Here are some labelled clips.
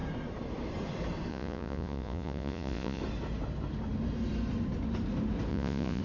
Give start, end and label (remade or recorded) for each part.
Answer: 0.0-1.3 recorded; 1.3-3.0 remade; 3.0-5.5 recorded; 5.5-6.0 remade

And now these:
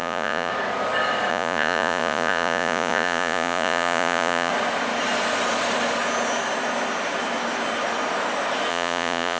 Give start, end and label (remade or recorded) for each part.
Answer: 0.0-0.5 remade; 0.5-1.3 recorded; 1.3-4.5 remade; 4.5-8.7 recorded; 8.7-9.4 remade